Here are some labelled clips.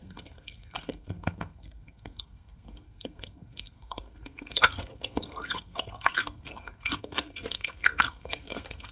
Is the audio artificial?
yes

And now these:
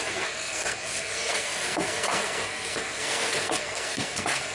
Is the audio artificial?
yes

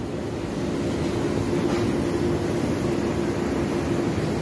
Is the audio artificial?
no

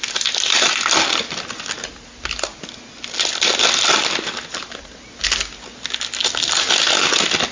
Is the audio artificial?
no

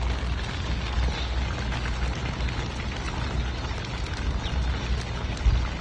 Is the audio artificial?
no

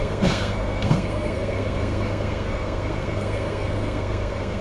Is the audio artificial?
yes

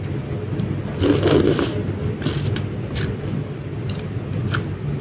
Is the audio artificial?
no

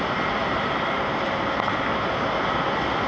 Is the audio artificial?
no